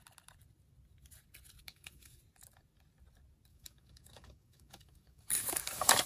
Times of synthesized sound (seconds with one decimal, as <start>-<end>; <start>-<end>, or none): 1.6-2.2; 3.5-6.1